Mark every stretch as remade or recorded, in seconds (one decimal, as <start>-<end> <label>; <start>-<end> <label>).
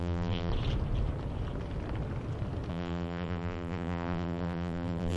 0.0-0.5 remade; 0.5-2.7 recorded; 2.7-5.2 remade